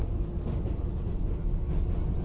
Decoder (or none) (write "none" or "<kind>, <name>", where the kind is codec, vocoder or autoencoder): none